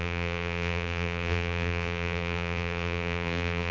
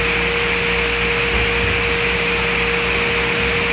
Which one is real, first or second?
second